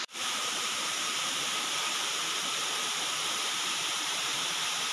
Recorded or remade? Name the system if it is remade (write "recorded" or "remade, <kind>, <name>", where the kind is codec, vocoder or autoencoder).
remade, vocoder, BigVGAN v2